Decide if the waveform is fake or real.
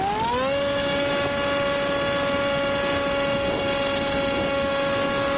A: real